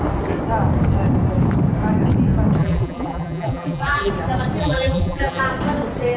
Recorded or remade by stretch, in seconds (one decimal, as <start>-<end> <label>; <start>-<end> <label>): 0.0-2.6 recorded; 2.6-4.1 remade; 4.1-4.6 recorded; 4.6-5.4 remade; 5.4-6.2 recorded